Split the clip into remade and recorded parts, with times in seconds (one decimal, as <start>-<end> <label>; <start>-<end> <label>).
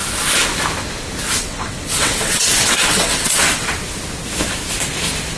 0.0-1.4 recorded; 1.4-3.7 remade; 3.7-5.4 recorded